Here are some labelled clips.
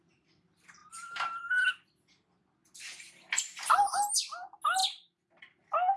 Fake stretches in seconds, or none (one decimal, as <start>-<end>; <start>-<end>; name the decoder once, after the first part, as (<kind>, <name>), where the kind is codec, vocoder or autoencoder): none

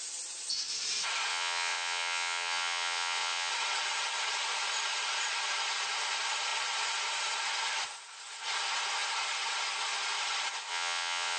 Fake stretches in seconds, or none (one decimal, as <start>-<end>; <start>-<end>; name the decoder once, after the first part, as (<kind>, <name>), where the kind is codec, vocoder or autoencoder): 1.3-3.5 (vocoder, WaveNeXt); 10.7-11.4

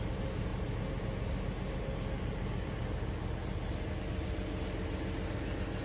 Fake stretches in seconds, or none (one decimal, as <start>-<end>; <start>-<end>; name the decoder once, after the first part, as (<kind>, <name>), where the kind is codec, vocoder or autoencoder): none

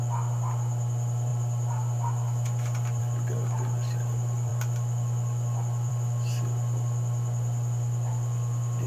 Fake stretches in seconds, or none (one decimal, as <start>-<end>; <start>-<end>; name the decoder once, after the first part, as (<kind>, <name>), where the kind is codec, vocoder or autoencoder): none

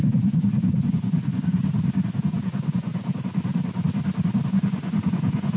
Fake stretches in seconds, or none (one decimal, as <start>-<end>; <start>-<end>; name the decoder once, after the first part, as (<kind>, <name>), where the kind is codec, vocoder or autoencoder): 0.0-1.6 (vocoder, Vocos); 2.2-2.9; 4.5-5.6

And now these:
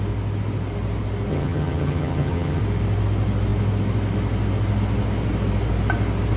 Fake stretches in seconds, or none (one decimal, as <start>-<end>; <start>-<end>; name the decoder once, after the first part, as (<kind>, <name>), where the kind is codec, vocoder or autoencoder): 1.3-2.6 (vocoder, HiFi-GAN)